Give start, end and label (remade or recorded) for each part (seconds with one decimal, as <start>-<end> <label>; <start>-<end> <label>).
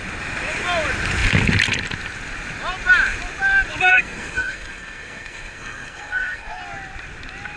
0.0-3.9 recorded; 3.9-6.6 remade; 6.6-7.6 recorded